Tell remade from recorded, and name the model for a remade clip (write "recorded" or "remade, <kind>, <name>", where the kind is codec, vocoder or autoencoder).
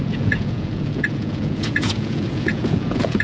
remade, vocoder, Vocos